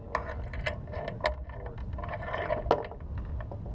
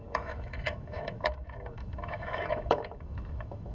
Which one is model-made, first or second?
second